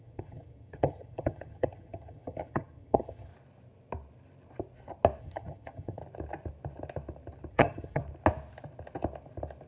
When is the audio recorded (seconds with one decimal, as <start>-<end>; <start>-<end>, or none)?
3.3-5.2; 6.0-7.5; 8.0-9.7